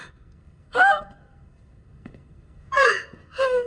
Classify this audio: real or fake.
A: fake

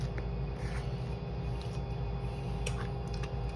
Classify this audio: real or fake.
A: real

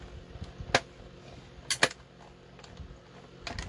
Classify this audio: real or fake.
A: real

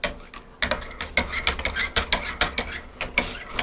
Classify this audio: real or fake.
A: real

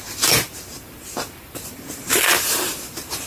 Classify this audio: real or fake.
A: fake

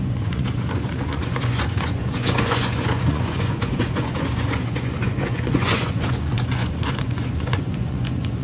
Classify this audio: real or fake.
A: fake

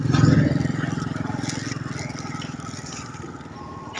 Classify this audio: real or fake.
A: real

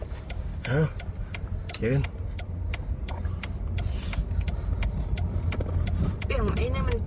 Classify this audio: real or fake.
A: real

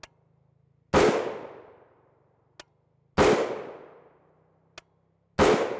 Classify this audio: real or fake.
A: real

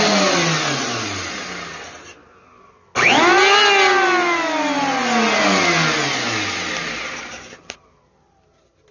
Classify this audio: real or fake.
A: real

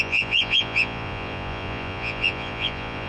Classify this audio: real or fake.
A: fake